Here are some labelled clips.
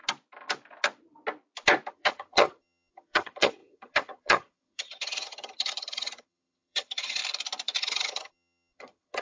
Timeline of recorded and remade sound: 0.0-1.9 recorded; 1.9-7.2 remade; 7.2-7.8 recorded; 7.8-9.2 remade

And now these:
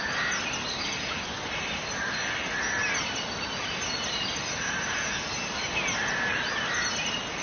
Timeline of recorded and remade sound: 0.0-7.4 recorded

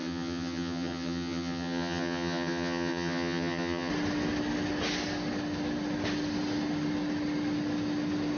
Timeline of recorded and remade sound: 0.0-3.9 remade; 3.9-8.4 recorded

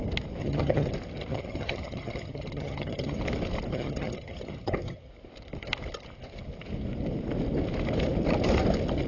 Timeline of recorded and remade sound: 0.0-0.4 recorded; 0.4-0.9 remade; 0.9-1.3 recorded; 1.3-3.2 remade; 3.2-3.7 recorded; 3.7-5.1 remade; 5.1-9.1 recorded

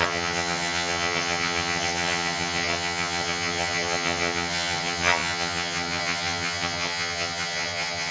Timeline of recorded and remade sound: 0.0-8.1 remade

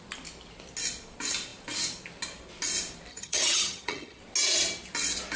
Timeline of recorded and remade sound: 0.0-3.1 recorded; 3.1-4.2 remade; 4.2-5.4 recorded